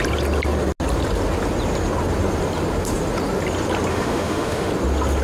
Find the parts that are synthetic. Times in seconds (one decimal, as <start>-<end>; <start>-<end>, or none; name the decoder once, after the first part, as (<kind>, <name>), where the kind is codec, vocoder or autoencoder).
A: 3.9-4.7 (autoencoder, DAC-VAE)